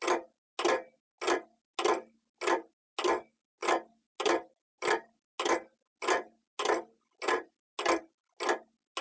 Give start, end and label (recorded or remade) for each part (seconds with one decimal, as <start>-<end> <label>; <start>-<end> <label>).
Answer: 0.0-9.0 recorded